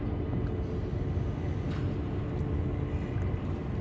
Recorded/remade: recorded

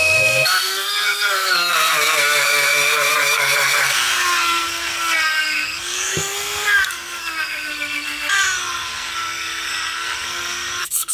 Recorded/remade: remade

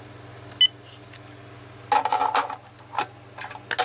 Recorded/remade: recorded